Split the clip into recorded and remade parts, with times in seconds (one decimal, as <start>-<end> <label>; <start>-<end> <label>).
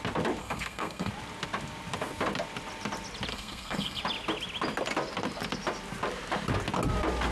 0.0-0.4 recorded; 0.4-1.1 remade; 1.1-3.3 recorded; 3.3-4.0 remade; 4.0-7.3 recorded